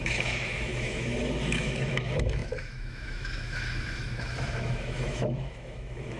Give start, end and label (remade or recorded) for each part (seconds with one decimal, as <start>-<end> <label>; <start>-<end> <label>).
0.0-6.2 remade